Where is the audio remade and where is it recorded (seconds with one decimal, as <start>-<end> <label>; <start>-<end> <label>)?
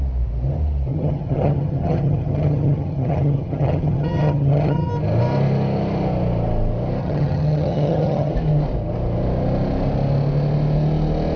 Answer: 0.0-0.9 recorded; 0.9-4.9 remade; 4.9-7.0 recorded; 7.0-8.3 remade; 8.3-11.4 recorded